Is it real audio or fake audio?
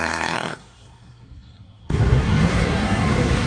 fake